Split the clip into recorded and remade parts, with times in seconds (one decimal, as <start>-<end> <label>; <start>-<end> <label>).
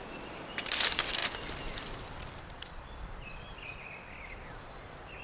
0.0-5.2 remade